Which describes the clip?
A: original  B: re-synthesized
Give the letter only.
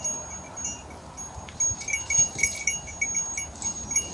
A